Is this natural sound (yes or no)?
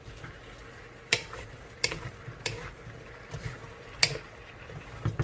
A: no